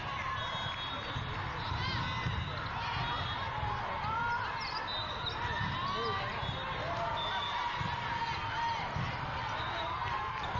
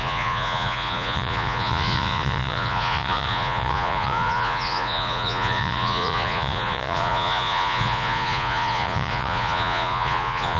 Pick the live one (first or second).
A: first